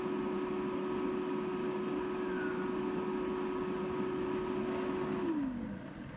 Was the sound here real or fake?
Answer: real